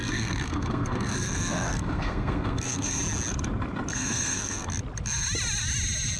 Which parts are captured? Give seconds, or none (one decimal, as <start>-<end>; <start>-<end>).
3.0-3.9; 4.7-6.2